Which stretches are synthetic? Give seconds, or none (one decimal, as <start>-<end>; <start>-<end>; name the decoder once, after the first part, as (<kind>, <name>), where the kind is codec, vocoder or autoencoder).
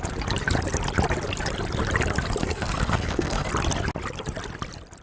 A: 2.4-3.5 (codec, SNAC)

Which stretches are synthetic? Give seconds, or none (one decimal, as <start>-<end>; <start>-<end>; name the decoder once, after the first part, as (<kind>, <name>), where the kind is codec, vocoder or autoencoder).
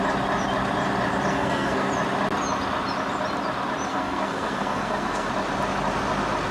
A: 1.3-1.9 (codec, SNAC); 3.9-5.3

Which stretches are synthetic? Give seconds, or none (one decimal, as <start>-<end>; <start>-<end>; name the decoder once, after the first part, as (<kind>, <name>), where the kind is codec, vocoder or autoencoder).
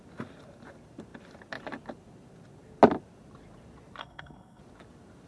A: 4.0-4.6 (codec, SNAC)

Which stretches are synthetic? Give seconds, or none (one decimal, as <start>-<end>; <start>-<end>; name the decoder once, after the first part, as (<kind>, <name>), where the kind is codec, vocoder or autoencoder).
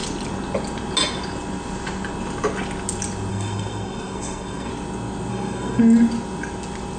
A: 3.3-4.7 (codec, SNAC); 5.3-5.8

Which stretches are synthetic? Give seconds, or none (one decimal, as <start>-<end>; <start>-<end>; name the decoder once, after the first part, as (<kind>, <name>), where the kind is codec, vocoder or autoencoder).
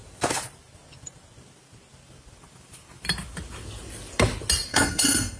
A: 4.7-5.4 (codec, SNAC)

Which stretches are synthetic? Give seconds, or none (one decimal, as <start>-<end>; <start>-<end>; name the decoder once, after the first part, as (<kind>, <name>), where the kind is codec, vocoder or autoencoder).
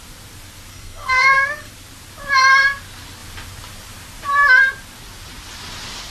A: 0.7-1.7 (codec, SNAC)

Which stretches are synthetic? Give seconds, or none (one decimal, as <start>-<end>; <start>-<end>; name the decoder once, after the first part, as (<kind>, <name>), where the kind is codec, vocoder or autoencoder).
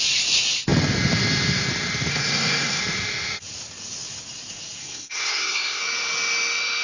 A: 2.1-2.8 (codec, SNAC); 4.8-5.8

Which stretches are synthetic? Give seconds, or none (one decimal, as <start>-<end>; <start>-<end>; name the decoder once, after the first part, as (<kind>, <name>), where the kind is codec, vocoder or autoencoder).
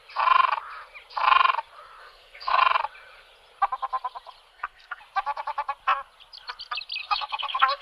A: 2.0-2.6 (codec, SNAC); 4.5-5.0; 7.0-7.8